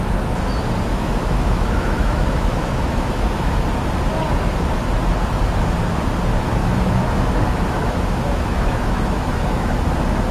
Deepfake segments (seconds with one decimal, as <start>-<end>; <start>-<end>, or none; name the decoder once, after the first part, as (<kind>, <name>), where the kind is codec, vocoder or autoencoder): 0.9-3.5 (autoencoder, DAC-VAE); 6.6-9.7